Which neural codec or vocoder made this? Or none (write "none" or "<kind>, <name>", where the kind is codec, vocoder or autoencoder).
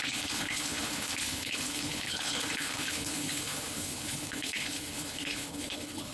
codec, HILCodec